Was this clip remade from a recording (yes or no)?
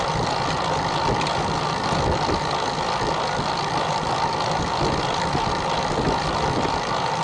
no